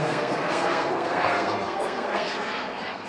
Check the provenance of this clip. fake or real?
fake